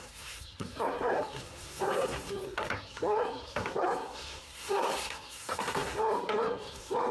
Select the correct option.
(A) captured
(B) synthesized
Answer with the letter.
B